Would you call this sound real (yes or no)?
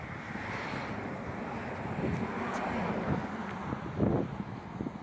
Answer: yes